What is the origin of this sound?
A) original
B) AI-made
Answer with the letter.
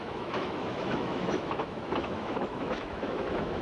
B